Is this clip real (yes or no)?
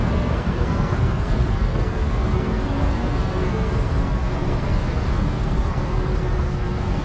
no